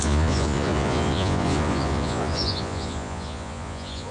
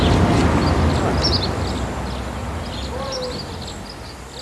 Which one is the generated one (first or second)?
first